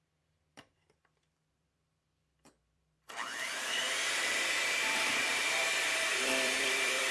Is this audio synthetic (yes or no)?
yes